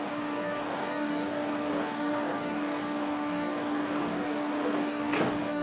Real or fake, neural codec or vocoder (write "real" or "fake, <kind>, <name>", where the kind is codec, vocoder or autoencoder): fake, codec, DAC